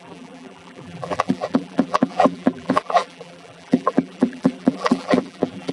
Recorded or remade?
remade